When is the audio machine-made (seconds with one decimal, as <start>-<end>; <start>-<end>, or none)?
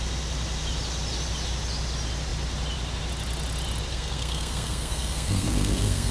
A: 3.9-6.1